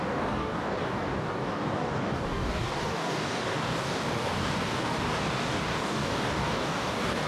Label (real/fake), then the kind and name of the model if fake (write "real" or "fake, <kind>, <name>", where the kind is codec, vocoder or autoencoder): fake, codec, DAC